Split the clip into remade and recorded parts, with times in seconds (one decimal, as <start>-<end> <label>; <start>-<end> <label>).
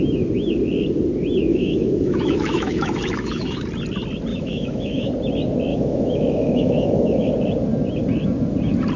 0.0-1.5 recorded; 1.5-3.6 remade; 3.6-4.3 recorded; 4.3-5.1 remade; 5.1-5.7 recorded; 5.7-7.3 remade; 7.3-9.0 recorded